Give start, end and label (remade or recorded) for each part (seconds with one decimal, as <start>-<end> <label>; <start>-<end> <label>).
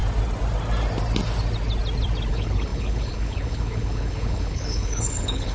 0.0-2.3 recorded; 2.3-5.5 remade